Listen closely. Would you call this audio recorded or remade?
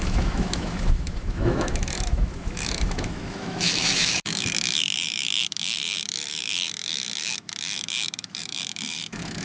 remade